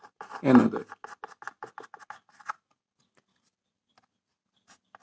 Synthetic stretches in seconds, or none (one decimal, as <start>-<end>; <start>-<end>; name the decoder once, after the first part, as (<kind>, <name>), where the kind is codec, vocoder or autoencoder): none